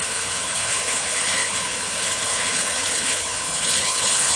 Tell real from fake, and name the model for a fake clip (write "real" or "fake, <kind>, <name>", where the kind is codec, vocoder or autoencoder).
fake, codec, HILCodec